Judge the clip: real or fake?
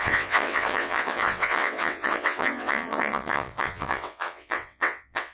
fake